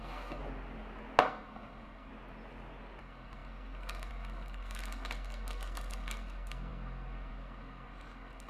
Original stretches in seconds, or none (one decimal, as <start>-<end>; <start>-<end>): 0.4-1.2; 2.1-3.0